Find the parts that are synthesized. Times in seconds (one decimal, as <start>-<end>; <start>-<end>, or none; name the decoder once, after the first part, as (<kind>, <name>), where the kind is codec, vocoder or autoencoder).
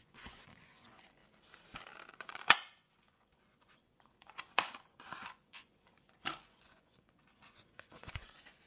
0.0-1.2 (vocoder, Vocos); 2.1-8.7